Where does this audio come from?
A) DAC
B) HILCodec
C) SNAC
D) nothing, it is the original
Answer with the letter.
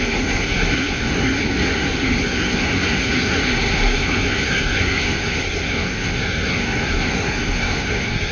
C